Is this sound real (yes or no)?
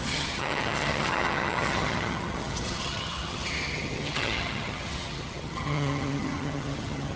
no